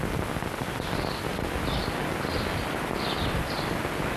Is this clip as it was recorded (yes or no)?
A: yes